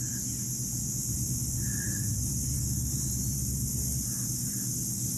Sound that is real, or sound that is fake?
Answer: real